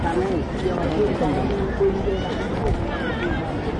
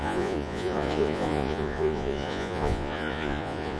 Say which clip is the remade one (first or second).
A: second